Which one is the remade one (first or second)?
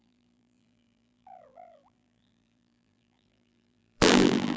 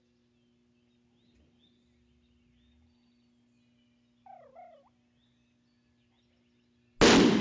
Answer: first